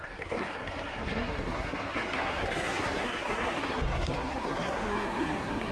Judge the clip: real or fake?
fake